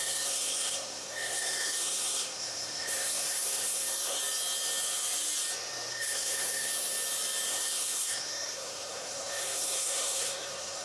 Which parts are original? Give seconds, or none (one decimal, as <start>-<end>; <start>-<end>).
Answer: 4.2-5.9; 6.7-7.5